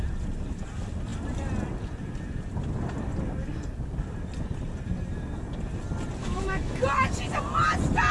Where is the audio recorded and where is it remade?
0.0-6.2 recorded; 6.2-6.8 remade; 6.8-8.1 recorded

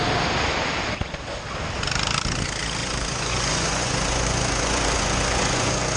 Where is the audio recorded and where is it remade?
0.0-2.8 recorded; 2.8-6.0 remade

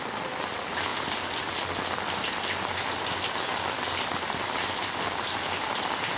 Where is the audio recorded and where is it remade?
0.0-6.2 recorded

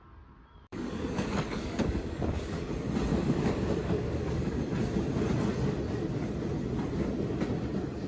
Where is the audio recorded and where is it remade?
0.0-0.7 recorded; 0.7-2.7 remade; 2.7-3.1 recorded; 3.1-4.7 remade; 4.7-8.1 recorded

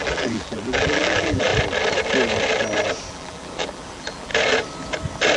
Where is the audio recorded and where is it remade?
0.0-1.5 remade; 1.5-3.1 recorded; 3.1-4.3 remade; 4.3-5.4 recorded

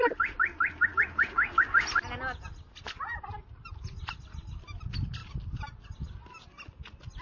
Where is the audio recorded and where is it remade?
0.0-7.2 recorded

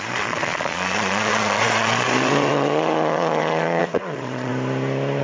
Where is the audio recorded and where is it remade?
0.0-4.5 remade; 4.5-5.2 recorded